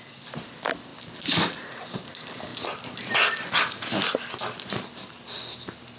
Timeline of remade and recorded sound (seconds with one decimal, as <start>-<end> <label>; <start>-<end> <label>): 0.0-6.0 recorded